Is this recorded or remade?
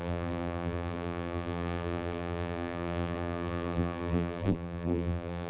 remade